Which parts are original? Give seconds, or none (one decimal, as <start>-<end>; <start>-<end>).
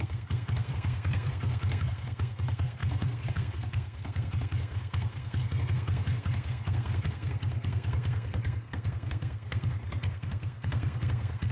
none